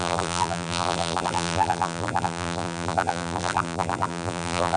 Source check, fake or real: fake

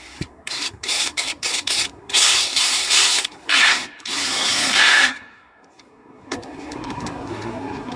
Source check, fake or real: fake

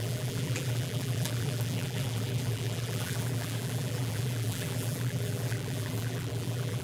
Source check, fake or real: fake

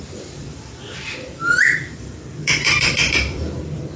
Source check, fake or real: fake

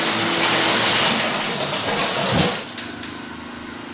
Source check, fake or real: real